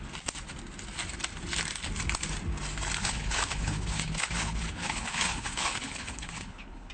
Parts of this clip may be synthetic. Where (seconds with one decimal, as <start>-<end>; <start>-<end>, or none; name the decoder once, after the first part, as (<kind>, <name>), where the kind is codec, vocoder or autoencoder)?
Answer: 3.0-6.9 (codec, HILCodec)